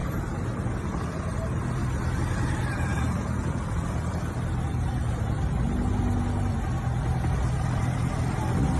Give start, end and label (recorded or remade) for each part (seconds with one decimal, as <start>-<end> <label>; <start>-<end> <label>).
0.0-8.8 recorded